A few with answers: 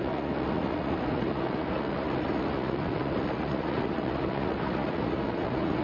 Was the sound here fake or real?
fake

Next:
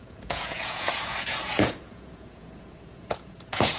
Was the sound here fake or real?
fake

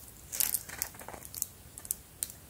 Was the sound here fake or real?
real